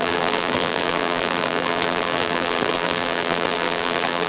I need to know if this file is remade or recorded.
remade